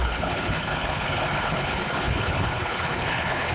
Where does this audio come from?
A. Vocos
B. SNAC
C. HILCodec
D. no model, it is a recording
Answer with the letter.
C